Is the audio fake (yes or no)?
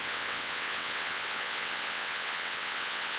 yes